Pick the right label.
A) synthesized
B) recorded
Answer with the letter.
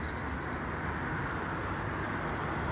B